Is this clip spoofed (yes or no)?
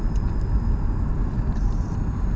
yes